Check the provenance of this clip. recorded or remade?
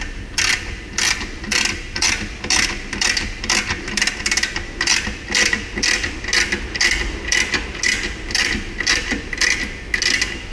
recorded